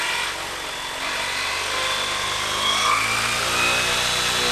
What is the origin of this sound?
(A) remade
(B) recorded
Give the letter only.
B